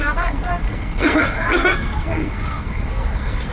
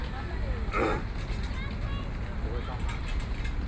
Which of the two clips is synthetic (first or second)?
first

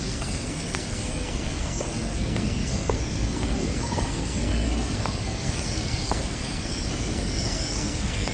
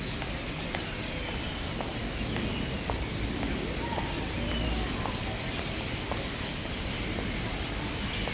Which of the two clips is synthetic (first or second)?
first